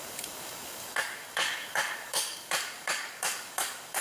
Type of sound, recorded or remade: remade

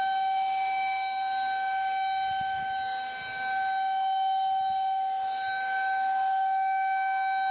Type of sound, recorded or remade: remade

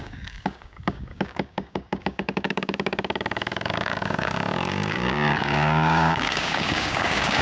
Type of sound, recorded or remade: remade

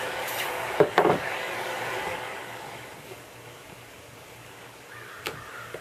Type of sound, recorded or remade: remade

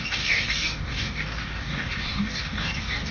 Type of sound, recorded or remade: remade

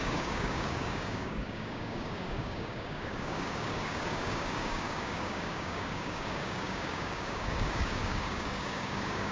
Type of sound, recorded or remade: remade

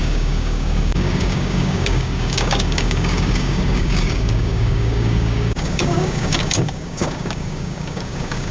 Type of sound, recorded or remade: remade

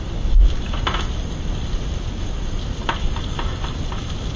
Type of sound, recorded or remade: recorded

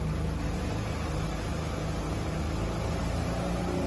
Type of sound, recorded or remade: recorded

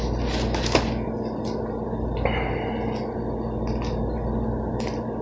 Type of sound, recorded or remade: recorded